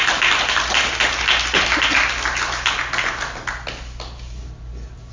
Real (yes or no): yes